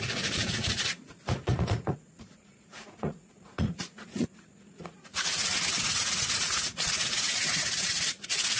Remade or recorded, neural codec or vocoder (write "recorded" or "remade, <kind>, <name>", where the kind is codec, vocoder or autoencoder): remade, vocoder, Vocos